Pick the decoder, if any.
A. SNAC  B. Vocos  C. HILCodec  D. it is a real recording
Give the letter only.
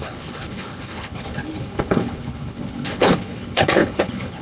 C